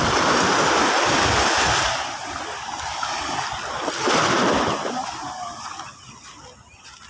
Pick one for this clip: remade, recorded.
recorded